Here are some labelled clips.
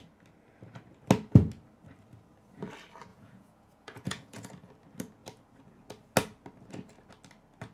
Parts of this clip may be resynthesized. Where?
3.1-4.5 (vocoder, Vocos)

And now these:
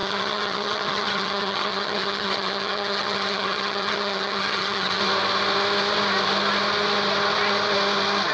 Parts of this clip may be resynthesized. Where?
0.0-5.0 (vocoder, HiFi-GAN)

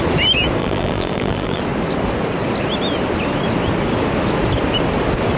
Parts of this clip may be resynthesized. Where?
0.6-1.6 (vocoder, BigVGAN v2)